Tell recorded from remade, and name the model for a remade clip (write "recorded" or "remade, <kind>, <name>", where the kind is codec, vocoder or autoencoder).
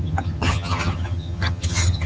remade, vocoder, HiFi-GAN